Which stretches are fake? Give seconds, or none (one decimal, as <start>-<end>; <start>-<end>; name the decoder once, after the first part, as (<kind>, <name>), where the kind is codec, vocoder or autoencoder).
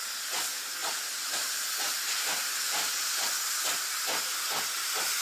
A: 0.8-3.9 (vocoder, BigVGAN v2)